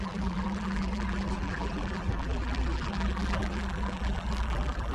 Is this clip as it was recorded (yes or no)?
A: no